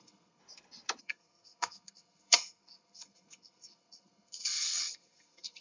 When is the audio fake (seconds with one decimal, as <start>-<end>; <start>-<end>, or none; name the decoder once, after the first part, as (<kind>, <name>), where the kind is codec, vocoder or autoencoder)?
0.0-0.4 (codec, SNAC); 1.0-5.6